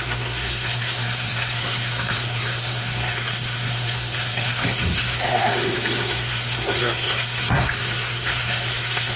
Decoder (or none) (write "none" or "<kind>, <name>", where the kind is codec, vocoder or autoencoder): codec, SNAC